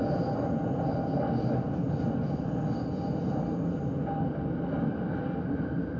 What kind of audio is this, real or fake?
real